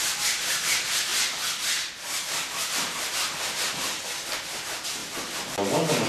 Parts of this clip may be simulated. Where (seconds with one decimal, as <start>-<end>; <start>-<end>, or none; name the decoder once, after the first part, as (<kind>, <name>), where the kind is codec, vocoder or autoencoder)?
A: none